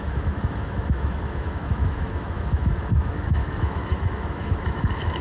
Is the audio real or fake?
fake